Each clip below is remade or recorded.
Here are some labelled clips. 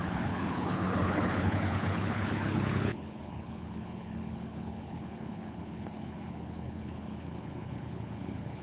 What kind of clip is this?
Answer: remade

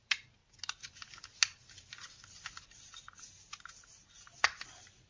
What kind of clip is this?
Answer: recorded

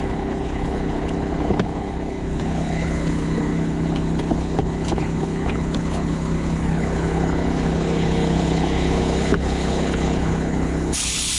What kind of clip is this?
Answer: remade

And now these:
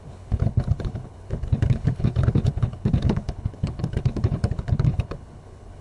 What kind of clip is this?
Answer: remade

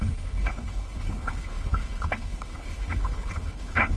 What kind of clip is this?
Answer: remade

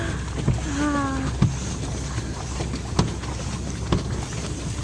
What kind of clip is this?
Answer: recorded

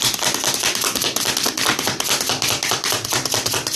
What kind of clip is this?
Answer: recorded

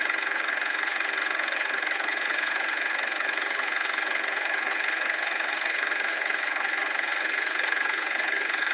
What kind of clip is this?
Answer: remade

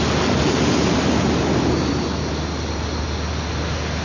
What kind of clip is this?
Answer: recorded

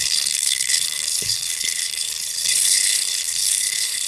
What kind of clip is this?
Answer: remade